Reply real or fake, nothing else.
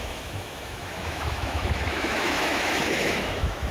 fake